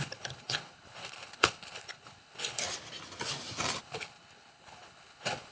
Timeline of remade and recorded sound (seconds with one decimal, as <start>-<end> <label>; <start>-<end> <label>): 0.0-2.6 remade; 2.6-3.8 recorded; 3.8-5.5 remade

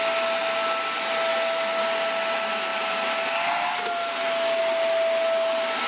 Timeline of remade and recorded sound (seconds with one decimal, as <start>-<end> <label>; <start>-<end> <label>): 0.0-5.9 recorded

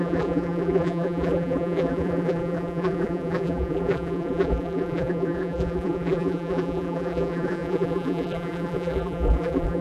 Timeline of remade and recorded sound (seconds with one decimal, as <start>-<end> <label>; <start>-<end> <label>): 0.0-9.8 remade